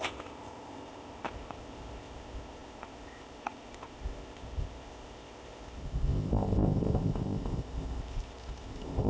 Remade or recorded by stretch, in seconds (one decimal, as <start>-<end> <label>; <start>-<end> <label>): 0.0-9.1 remade